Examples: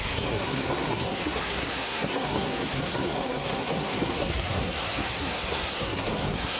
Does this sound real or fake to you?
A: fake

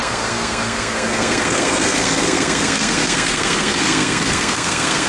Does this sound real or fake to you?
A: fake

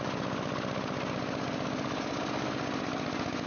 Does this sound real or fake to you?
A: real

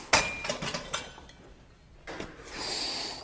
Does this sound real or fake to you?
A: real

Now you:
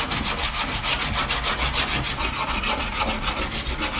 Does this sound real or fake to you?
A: real